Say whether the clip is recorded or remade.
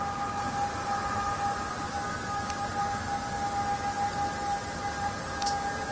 recorded